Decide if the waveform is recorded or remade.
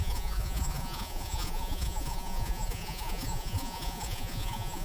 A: remade